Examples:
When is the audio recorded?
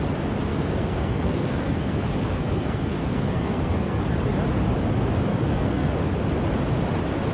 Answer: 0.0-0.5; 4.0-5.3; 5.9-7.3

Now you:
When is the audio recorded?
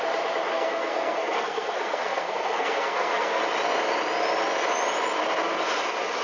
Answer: 0.0-0.5; 3.4-6.2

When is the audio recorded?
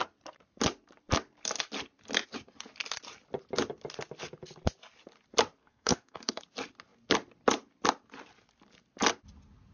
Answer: 0.0-5.6; 6.4-9.7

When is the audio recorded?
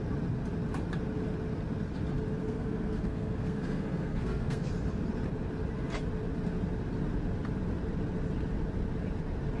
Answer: 0.0-2.4; 4.7-9.6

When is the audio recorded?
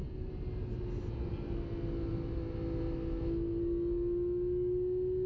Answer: 0.0-5.3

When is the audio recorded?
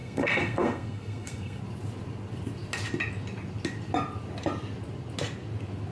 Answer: 1.6-5.9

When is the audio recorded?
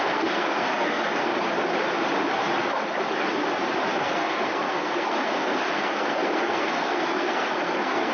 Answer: 1.3-4.0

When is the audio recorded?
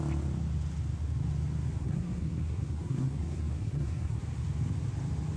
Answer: 0.0-1.8; 4.2-5.4